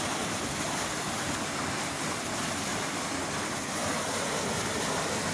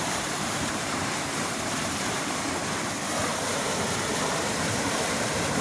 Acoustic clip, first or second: first